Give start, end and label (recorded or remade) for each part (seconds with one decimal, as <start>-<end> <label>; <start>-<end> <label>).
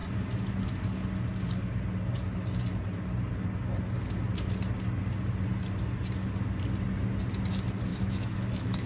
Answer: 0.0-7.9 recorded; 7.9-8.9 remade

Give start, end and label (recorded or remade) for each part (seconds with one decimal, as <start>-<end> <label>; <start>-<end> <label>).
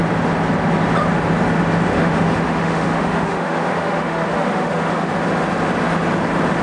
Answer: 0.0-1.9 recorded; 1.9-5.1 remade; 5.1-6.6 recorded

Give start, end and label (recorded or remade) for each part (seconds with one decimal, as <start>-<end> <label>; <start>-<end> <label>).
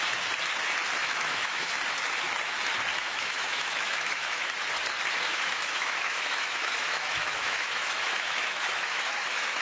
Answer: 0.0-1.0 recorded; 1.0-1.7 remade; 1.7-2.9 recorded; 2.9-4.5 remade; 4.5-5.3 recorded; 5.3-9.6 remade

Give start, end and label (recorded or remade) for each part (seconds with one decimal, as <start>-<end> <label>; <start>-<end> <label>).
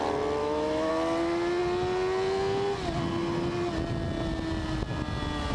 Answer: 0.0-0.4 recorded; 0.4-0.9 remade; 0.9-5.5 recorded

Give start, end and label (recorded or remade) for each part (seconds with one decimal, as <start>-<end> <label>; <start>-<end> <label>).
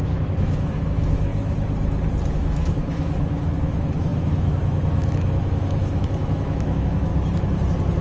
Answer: 0.0-1.3 remade; 1.3-2.3 recorded; 2.3-7.1 remade; 7.1-8.0 recorded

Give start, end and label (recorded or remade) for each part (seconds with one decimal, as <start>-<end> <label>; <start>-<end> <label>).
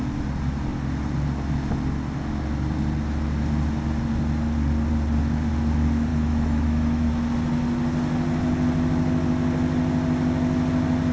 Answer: 0.0-6.1 recorded; 6.1-7.1 remade; 7.1-11.1 recorded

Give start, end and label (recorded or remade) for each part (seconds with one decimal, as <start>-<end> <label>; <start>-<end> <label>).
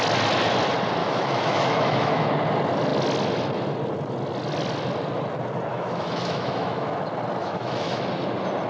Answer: 0.0-1.0 recorded; 1.0-2.3 remade; 2.3-5.7 recorded; 5.7-6.9 remade; 6.9-7.4 recorded; 7.4-8.1 remade; 8.1-8.7 recorded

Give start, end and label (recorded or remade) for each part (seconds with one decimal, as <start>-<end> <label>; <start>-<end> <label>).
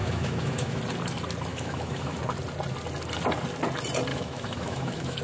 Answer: 0.0-0.8 remade; 0.8-1.5 recorded; 1.5-2.2 remade; 2.2-4.1 recorded; 4.1-5.2 remade